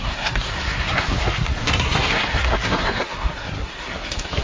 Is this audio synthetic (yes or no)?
yes